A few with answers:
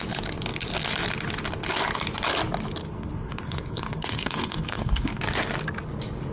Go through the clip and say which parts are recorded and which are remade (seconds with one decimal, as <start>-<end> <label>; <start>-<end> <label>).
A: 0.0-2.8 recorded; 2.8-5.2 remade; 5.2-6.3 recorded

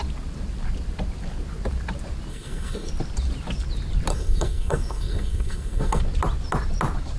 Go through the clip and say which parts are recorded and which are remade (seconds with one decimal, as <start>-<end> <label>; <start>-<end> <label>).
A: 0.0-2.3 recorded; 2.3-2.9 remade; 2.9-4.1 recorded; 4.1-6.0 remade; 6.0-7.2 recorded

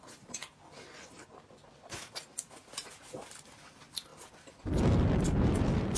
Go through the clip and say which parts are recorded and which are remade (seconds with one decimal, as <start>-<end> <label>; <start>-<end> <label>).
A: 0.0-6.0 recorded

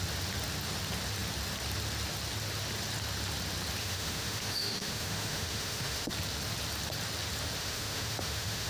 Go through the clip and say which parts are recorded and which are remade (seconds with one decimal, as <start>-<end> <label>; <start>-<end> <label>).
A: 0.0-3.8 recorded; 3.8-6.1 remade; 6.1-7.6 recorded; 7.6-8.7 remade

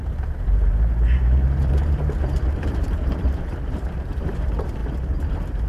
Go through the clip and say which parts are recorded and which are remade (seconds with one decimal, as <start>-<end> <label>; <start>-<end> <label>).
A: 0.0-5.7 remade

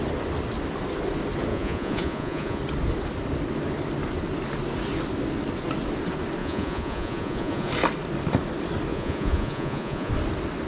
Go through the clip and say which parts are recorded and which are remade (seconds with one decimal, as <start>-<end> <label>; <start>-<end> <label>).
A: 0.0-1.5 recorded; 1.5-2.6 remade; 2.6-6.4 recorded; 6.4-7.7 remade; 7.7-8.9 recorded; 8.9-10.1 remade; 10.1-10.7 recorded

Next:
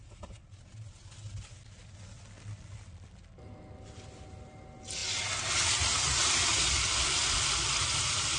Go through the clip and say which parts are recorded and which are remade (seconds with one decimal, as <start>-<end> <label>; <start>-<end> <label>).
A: 0.0-8.4 recorded